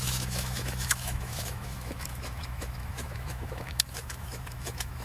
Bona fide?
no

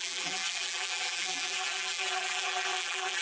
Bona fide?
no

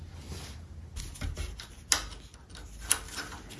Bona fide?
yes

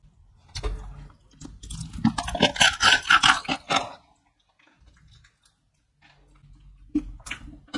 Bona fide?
yes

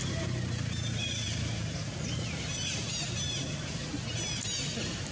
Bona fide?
yes